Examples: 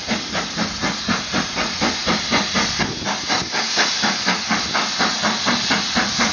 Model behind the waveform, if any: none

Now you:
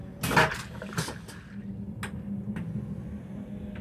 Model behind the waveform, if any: none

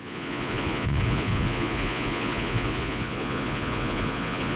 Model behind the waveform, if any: vocoder, Vocos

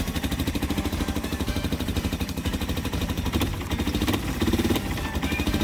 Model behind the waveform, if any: vocoder, BigVGAN v2